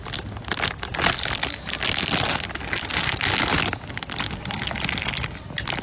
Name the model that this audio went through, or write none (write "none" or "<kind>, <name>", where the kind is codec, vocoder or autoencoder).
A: none